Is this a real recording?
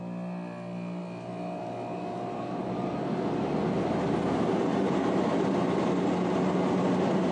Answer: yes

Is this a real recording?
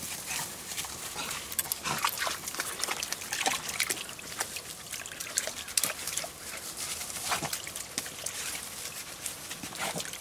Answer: yes